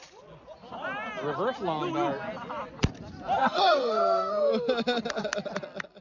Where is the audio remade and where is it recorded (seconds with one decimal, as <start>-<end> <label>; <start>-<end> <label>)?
0.0-3.4 recorded; 3.4-4.5 remade; 4.5-6.0 recorded

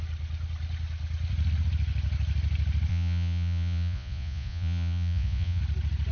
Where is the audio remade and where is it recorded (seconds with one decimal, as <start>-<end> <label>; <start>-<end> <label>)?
0.0-2.9 recorded; 2.9-5.6 remade; 5.6-6.1 recorded

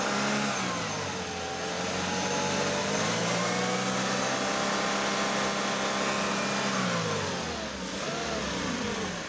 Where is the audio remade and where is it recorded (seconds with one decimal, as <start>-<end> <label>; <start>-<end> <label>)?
0.0-2.8 recorded; 2.8-3.4 remade; 3.4-9.3 recorded

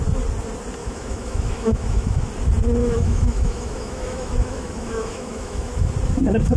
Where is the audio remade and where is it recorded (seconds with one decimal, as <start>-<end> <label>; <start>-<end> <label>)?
0.0-0.8 recorded; 0.8-2.3 remade; 2.3-2.8 recorded; 2.8-5.9 remade; 5.9-6.6 recorded

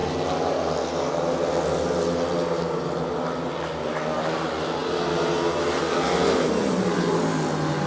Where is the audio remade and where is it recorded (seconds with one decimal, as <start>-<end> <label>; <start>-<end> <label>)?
0.0-7.9 recorded